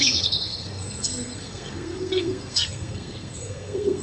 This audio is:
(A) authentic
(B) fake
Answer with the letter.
B